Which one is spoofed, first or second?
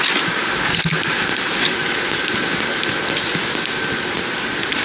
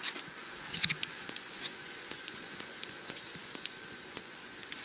second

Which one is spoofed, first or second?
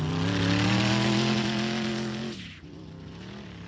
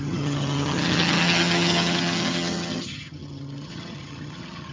second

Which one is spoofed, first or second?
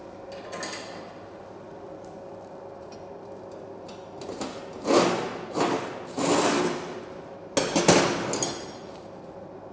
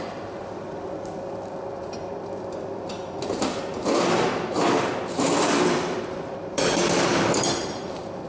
second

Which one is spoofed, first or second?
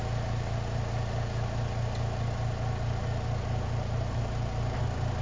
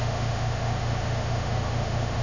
second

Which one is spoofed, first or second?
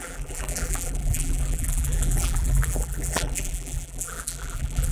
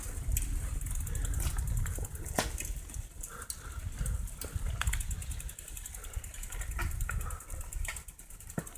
first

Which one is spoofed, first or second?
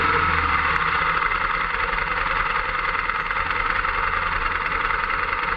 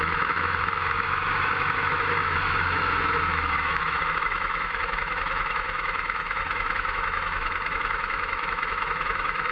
second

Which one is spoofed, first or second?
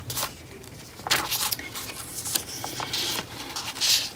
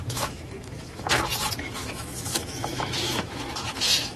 second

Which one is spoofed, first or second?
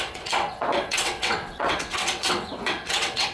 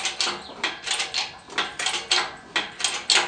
first